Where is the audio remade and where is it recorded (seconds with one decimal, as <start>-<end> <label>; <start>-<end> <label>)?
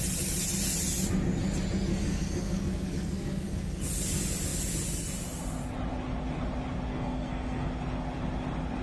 0.0-1.9 recorded; 1.9-3.8 remade; 3.8-6.9 recorded; 6.9-7.7 remade; 7.7-8.8 recorded